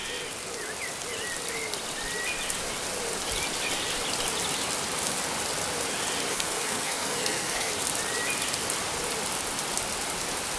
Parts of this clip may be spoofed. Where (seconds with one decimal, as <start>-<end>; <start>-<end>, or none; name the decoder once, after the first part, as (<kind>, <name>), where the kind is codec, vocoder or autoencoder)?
6.3-7.7 (codec, SNAC)